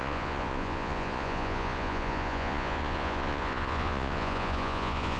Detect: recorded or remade remade